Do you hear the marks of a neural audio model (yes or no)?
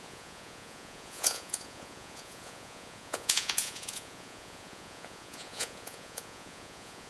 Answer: yes